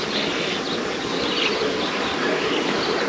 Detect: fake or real real